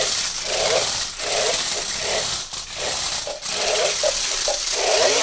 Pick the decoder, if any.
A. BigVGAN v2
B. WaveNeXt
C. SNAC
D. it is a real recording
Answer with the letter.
D